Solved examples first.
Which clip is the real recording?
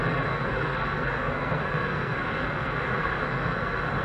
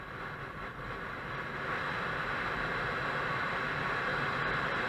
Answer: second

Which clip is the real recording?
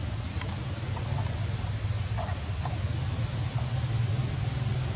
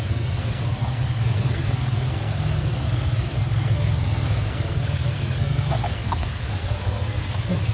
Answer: first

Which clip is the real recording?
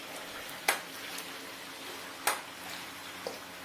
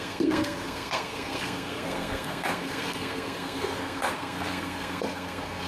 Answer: first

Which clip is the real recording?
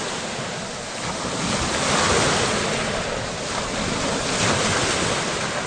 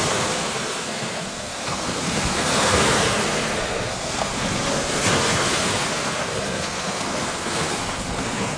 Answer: first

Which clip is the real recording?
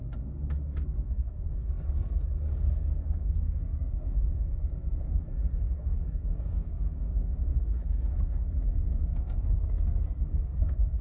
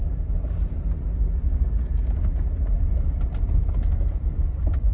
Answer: second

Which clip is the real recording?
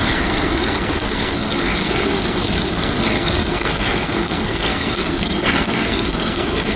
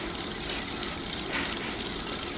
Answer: second